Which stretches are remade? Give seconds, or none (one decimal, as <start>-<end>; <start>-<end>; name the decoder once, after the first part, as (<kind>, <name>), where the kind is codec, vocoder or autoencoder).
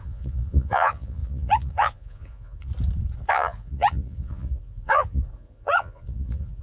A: 0.0-2.7 (vocoder, Vocos); 3.3-6.6